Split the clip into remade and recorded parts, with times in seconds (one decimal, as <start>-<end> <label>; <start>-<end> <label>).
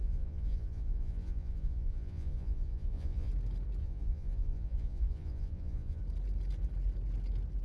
0.0-3.3 remade; 3.3-3.8 recorded; 3.8-6.0 remade; 6.0-7.6 recorded